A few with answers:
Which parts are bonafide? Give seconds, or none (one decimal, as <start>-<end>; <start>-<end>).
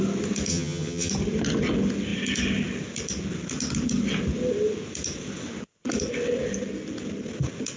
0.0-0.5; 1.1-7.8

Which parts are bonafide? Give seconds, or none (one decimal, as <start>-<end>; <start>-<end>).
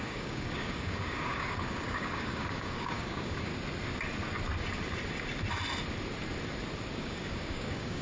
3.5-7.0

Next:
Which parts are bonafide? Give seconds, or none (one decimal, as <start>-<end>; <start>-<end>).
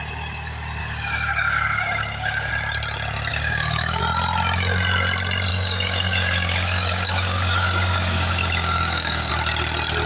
0.0-0.8; 2.5-3.3; 4.0-5.5; 9.3-10.1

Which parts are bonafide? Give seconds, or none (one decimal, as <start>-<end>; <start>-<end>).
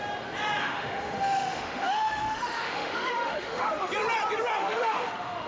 0.0-0.6; 3.9-4.6